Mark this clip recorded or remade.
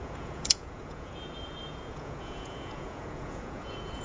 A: remade